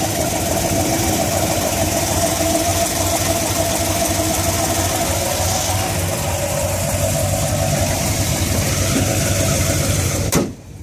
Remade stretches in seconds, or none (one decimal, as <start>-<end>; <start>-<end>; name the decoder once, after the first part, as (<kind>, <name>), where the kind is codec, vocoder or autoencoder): 0.0-2.7 (vocoder, BigVGAN v2); 7.9-10.8